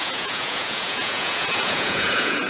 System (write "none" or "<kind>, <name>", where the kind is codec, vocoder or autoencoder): vocoder, Vocos